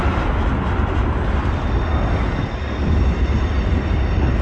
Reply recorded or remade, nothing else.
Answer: recorded